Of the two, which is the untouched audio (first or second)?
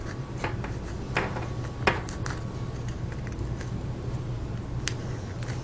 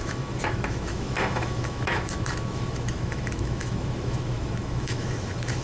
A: first